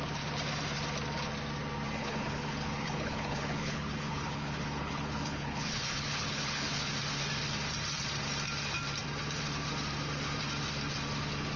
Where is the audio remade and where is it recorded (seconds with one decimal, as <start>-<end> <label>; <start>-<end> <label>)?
0.0-2.0 recorded; 2.0-6.9 remade; 6.9-11.6 recorded